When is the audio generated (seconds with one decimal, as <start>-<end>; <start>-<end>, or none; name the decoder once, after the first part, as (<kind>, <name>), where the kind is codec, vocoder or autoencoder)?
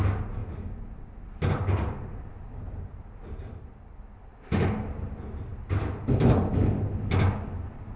none